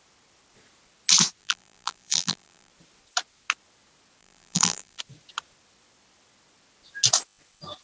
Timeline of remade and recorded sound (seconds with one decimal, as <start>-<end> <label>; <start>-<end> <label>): 0.0-1.4 recorded; 1.4-2.7 remade; 2.7-4.2 recorded; 4.2-5.0 remade; 5.0-7.8 recorded